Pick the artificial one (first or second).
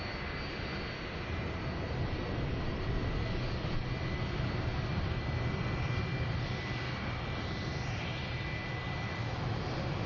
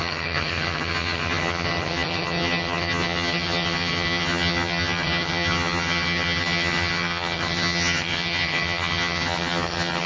second